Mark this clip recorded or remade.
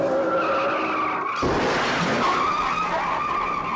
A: recorded